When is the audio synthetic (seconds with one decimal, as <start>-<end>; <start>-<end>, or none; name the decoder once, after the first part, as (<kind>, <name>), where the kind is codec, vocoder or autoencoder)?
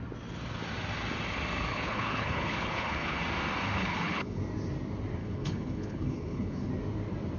1.7-3.2 (codec, HILCodec); 3.7-4.4; 5.2-6.7